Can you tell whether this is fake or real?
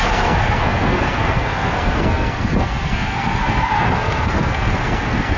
fake